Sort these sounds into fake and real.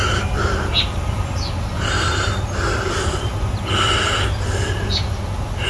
real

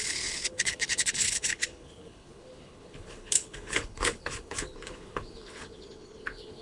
fake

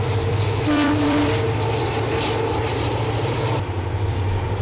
fake